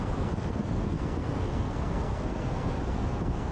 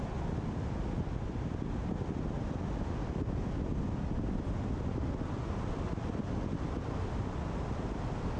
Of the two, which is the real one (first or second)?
second